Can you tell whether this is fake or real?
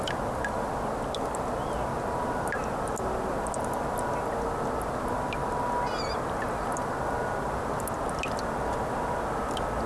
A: real